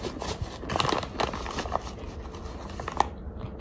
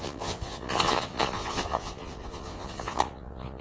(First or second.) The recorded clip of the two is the first